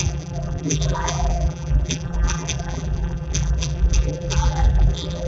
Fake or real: fake